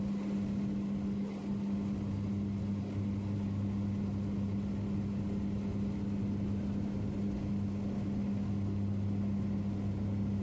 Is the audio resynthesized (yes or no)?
no